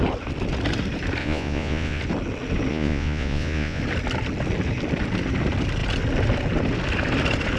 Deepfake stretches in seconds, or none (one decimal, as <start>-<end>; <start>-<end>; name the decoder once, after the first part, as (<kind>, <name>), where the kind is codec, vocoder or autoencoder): 1.2-2.0 (vocoder, Vocos); 2.7-3.8